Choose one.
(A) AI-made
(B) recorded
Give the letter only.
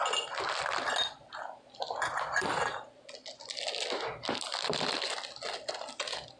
B